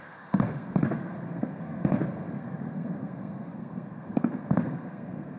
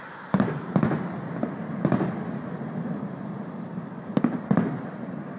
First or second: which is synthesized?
first